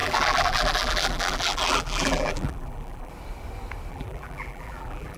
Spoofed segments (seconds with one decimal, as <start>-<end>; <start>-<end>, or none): 0.0-3.1; 3.9-5.2